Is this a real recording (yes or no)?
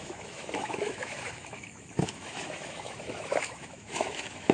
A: no